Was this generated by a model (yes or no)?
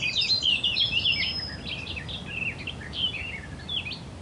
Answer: no